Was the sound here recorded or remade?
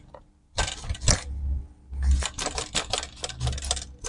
recorded